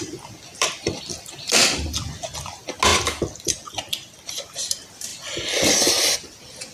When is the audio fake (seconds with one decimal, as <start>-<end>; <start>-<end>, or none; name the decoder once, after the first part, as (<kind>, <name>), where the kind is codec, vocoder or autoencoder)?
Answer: 0.5-1.0 (vocoder, BigVGAN v2); 2.9-4.3

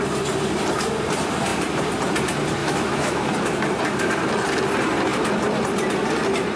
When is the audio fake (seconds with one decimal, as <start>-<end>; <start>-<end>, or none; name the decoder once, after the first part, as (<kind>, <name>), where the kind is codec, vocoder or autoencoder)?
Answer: 2.6-3.3 (autoencoder, DAC-VAE)

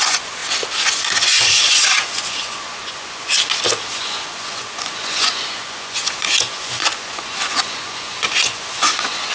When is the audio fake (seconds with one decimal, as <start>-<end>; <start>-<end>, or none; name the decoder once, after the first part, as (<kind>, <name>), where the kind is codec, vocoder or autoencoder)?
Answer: 0.0-0.4 (vocoder, Vocos); 0.9-3.3; 3.9-9.3

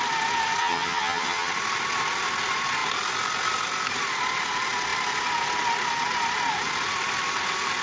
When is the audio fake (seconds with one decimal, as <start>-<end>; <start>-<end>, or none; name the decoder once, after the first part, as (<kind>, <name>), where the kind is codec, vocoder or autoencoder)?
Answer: 0.6-1.5 (vocoder, HiFi-GAN)

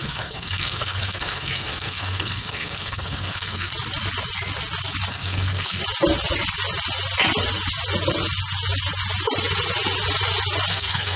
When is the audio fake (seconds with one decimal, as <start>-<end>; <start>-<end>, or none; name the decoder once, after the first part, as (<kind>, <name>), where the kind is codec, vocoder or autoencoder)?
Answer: 0.0-3.7 (codec, SNAC); 5.1-5.8; 10.7-11.2

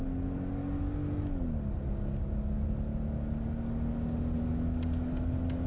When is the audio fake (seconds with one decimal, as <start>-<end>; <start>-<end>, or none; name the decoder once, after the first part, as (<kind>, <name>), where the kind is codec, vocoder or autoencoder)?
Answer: none